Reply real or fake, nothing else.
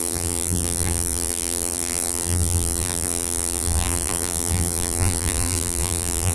fake